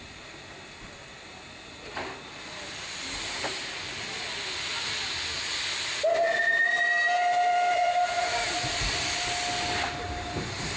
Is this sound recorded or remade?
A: recorded